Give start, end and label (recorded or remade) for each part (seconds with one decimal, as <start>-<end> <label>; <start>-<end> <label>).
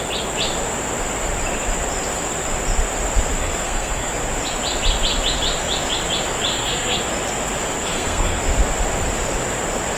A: 0.0-3.4 recorded; 3.4-4.1 remade; 4.1-6.5 recorded; 6.5-7.0 remade; 7.0-7.8 recorded; 7.8-8.4 remade; 8.4-10.0 recorded